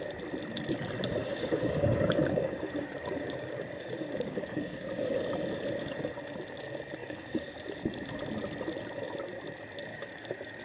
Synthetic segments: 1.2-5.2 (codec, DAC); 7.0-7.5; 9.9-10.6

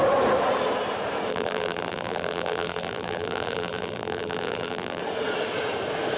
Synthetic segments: 1.3-5.0 (vocoder, BigVGAN v2)